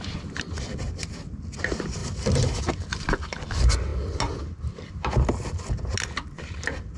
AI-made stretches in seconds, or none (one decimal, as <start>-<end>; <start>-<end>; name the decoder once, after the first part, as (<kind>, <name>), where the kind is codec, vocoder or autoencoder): none

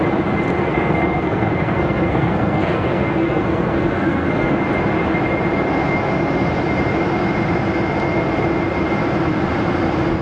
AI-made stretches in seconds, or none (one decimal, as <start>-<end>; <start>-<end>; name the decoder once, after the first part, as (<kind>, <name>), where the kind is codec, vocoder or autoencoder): 0.5-4.6 (codec, SNAC)

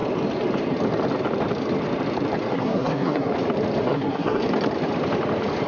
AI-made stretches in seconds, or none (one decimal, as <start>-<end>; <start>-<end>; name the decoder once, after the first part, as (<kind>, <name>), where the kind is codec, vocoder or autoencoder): 2.5-3.3 (codec, SNAC); 3.8-4.4

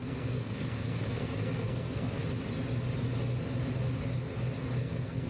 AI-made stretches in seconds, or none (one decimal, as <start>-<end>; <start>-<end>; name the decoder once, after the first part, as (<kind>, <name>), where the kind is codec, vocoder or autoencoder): 0.0-2.2 (codec, SNAC); 4.8-5.3

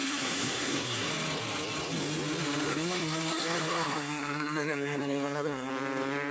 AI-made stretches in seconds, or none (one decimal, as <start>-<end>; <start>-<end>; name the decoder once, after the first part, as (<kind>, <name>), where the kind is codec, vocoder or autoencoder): 0.0-1.1 (codec, SNAC); 2.7-5.7

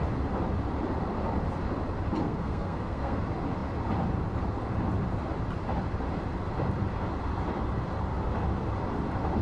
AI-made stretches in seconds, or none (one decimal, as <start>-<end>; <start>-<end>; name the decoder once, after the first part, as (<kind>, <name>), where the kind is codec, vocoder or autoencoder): 2.2-3.2 (codec, SNAC)